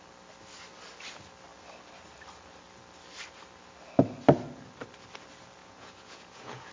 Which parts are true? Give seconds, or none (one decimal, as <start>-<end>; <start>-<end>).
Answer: 0.0-5.6